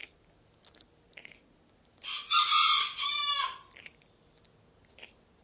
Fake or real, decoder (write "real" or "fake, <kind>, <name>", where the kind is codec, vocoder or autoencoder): real